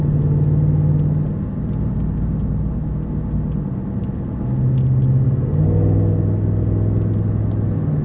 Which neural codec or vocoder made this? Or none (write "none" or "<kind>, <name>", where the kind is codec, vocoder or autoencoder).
none